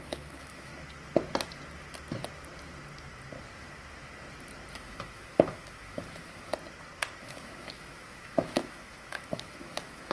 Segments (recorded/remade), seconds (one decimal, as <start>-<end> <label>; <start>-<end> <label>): 0.0-0.7 remade; 0.7-4.7 recorded; 4.7-6.5 remade; 6.5-7.2 recorded; 7.2-10.1 remade